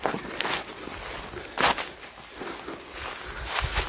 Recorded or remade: recorded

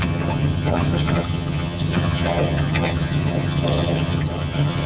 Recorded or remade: remade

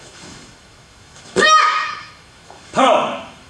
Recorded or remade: remade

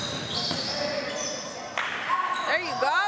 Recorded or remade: recorded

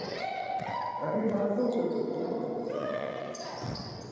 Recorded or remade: remade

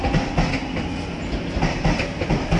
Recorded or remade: recorded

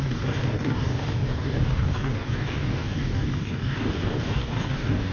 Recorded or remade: remade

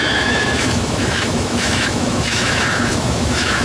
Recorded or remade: remade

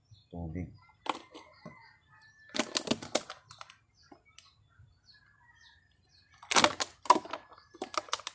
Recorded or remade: recorded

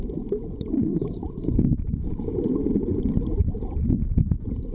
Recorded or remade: remade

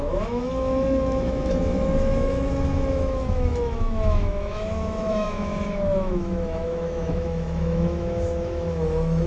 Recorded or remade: remade